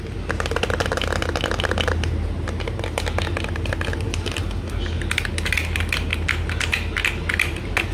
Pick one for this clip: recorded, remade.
recorded